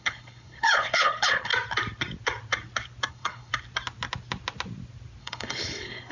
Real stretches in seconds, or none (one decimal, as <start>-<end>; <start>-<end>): 1.5-3.1; 3.5-5.2